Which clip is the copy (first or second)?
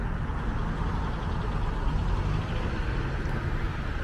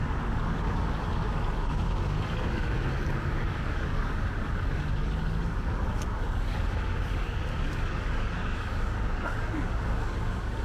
second